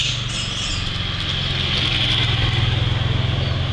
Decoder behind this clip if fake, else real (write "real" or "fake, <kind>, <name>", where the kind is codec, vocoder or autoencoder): real